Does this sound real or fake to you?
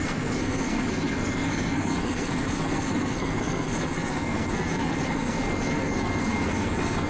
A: fake